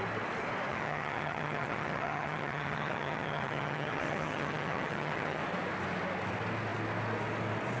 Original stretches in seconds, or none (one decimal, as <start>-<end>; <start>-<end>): 0.0-0.7; 5.4-7.8